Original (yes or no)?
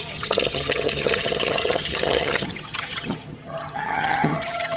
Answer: no